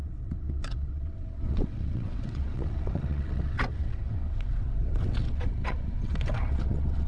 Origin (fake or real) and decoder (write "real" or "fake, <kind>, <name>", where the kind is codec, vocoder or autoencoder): fake, vocoder, WaveNeXt